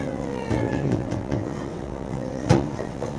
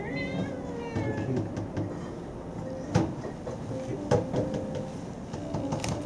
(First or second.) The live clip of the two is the second